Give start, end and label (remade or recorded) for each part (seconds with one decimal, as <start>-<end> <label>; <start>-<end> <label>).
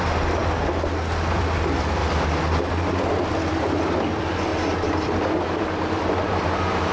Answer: 0.0-0.4 remade; 0.4-1.4 recorded; 1.4-2.0 remade; 2.0-2.6 recorded; 2.6-6.9 remade